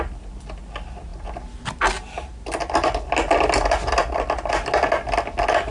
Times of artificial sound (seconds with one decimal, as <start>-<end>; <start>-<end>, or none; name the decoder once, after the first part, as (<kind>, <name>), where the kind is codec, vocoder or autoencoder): none